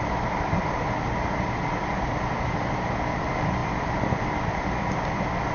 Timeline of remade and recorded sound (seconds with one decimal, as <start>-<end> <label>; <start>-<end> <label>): 0.0-5.5 recorded